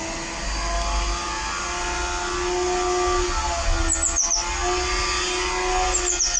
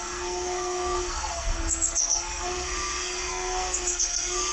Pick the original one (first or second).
first